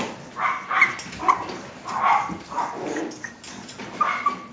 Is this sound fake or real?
real